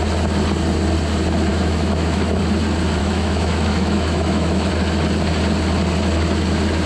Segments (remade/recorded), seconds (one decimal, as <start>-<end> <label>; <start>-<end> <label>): 0.0-1.5 recorded; 1.5-2.4 remade; 2.4-3.0 recorded; 3.0-4.7 remade; 4.7-6.9 recorded